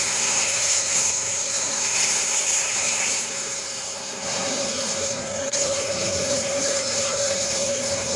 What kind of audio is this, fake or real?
fake